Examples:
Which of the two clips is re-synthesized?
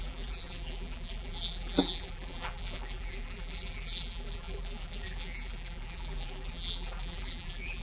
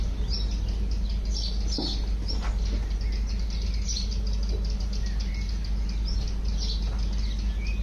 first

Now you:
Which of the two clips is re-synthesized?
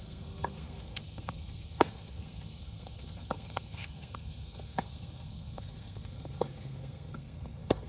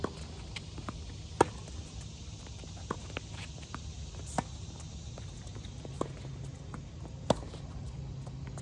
first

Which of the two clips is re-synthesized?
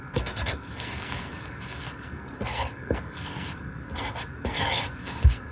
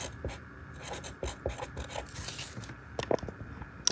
first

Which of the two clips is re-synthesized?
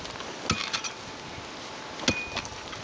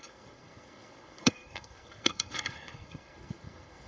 second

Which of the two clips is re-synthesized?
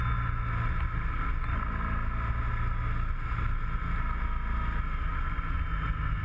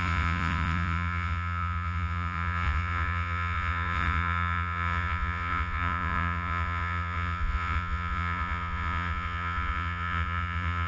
second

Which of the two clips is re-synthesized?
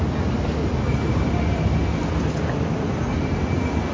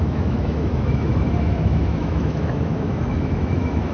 second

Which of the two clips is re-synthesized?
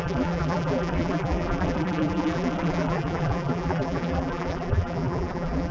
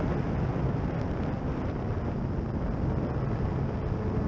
first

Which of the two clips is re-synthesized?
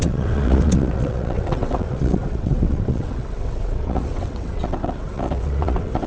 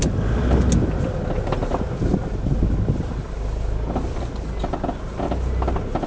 first